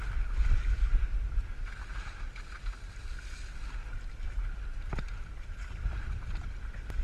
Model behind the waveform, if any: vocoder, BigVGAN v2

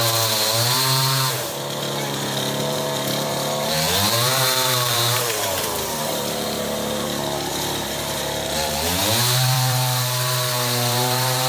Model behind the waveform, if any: vocoder, BigVGAN v2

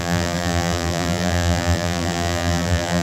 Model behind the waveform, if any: vocoder, BigVGAN v2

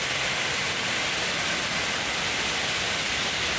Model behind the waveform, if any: none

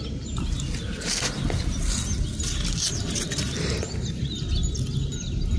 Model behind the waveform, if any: none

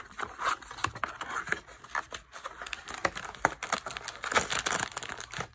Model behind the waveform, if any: none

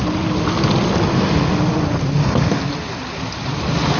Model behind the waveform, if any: none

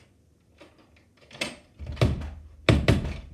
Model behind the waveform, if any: none